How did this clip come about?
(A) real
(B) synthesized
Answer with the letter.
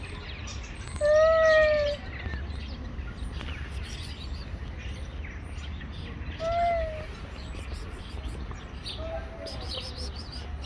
A